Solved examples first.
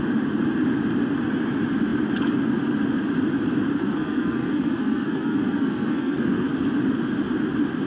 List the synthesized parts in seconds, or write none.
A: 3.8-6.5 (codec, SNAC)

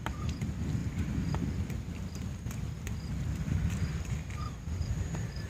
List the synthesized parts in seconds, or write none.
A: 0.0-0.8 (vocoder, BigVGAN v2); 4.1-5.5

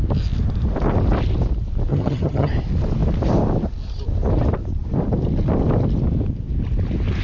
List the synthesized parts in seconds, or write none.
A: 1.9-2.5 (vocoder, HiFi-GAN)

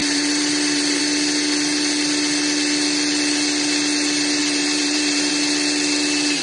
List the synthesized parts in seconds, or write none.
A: 0.0-1.0 (vocoder, BigVGAN v2); 4.4-5.3

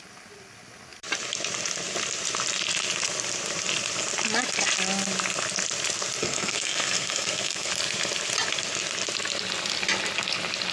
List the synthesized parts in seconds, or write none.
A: 6.2-7.7 (codec, SNAC)